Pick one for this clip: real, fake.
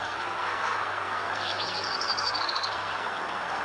fake